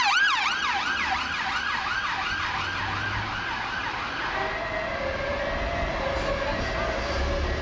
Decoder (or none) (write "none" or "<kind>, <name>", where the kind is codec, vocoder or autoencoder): none